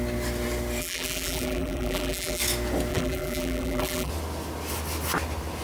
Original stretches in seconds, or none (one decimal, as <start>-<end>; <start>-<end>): 0.0-0.8; 2.4-2.9; 4.1-5.6